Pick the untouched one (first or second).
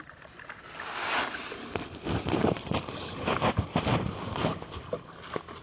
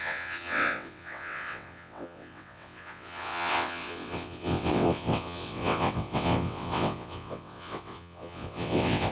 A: first